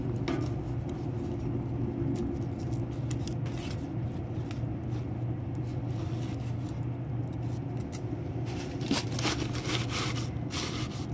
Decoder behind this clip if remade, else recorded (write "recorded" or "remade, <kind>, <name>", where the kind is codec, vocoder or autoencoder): recorded